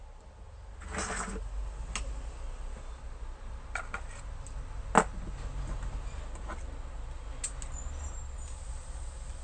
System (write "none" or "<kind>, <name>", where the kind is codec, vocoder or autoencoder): none